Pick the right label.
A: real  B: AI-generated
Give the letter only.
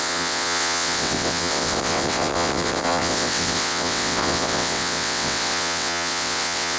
B